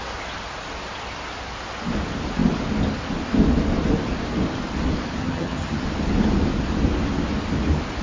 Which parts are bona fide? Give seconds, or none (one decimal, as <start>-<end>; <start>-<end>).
0.0-5.2; 5.8-8.0